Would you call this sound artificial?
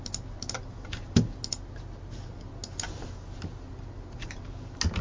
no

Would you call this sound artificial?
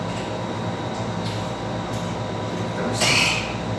no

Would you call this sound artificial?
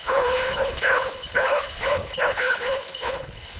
yes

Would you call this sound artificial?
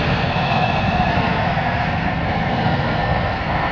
yes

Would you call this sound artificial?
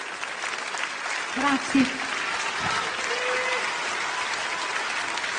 no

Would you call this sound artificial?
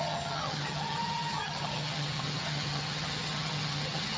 yes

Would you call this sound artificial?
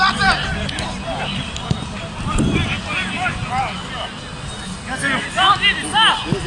no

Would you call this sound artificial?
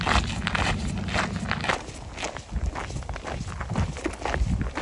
no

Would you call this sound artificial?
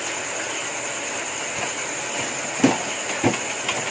no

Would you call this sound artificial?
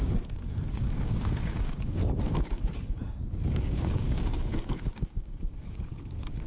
yes